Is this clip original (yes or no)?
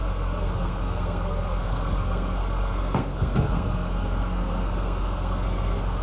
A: no